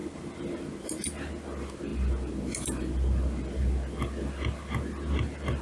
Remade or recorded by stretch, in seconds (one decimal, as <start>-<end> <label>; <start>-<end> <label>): 0.0-5.6 recorded